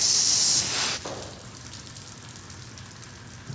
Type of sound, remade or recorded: recorded